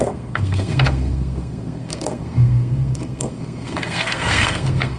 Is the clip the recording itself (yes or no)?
no